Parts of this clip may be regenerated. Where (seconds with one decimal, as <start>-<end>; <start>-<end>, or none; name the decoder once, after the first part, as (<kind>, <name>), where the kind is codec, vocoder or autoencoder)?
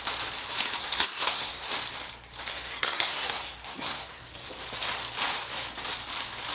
0.8-1.7 (codec, SNAC); 2.5-4.5